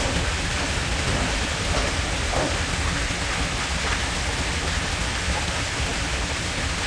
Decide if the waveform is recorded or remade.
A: recorded